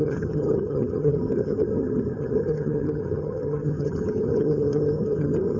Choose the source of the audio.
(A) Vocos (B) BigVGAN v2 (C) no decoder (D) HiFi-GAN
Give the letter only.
D